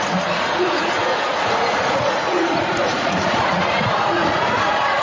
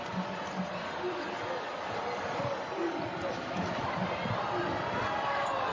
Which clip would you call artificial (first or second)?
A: first